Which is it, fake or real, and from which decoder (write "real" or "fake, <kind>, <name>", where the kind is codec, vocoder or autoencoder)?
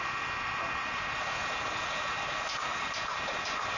real